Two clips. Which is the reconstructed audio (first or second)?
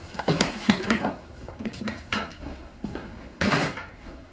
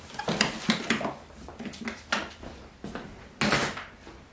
first